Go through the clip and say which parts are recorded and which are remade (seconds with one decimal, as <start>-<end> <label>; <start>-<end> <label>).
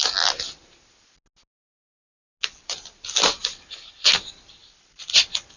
0.0-4.6 recorded; 4.6-5.6 remade